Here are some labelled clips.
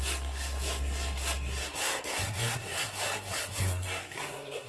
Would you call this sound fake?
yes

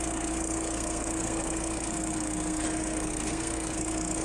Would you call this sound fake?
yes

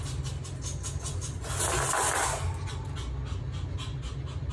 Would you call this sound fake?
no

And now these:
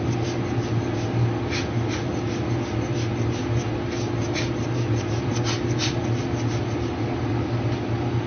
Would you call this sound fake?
no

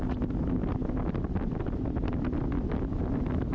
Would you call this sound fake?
no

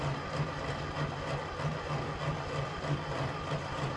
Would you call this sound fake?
no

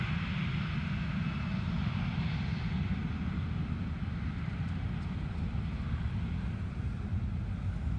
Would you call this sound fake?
no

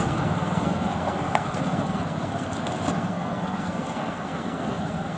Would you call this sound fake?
yes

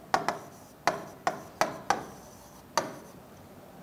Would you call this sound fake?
no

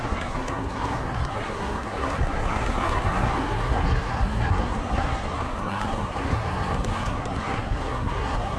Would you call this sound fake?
yes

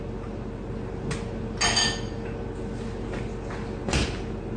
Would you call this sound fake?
no